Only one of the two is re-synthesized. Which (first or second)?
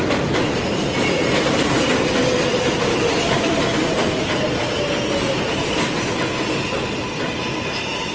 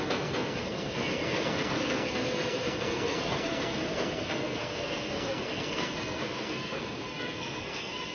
second